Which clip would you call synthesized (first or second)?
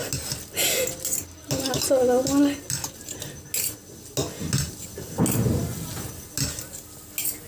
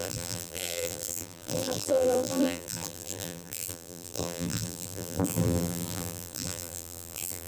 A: second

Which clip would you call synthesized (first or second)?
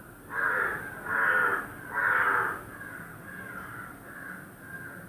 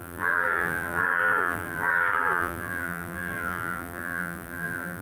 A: second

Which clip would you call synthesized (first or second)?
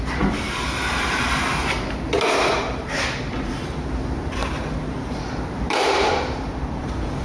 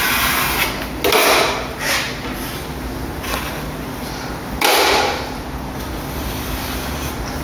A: first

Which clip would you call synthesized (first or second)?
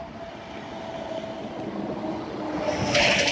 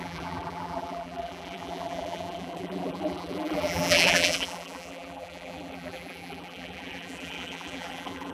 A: second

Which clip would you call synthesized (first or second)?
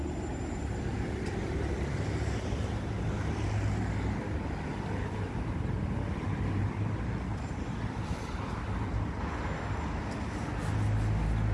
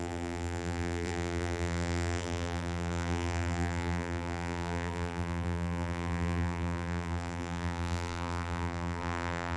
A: second